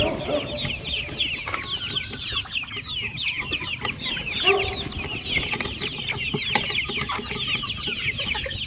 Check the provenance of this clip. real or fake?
real